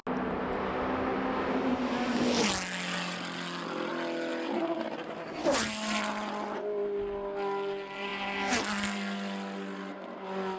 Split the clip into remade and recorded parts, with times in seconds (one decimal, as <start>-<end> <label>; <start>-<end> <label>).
0.0-10.6 recorded